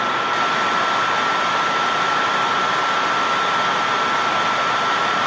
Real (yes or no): yes